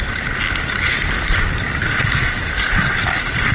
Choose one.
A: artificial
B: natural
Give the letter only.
B